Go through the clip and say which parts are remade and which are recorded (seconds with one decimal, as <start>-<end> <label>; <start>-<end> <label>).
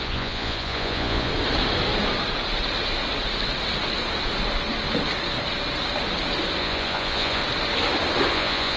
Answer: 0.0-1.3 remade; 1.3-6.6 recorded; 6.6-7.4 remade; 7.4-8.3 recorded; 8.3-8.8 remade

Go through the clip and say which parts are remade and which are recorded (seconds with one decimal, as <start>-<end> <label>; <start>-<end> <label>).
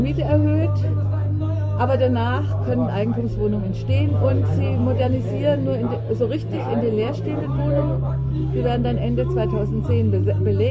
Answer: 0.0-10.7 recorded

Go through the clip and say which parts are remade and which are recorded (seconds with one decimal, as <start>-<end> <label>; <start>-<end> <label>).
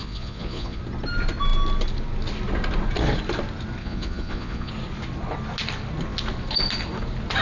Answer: 0.0-0.8 remade; 0.8-3.8 recorded; 3.8-4.7 remade; 4.7-7.4 recorded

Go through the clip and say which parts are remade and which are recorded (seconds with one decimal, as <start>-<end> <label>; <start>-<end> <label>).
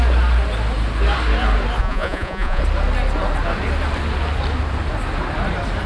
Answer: 0.0-1.8 recorded; 1.8-2.6 remade; 2.6-5.9 recorded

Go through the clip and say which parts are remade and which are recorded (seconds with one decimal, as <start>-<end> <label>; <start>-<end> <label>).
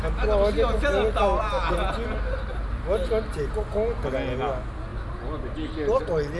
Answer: 0.0-6.4 recorded